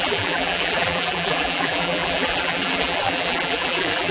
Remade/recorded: remade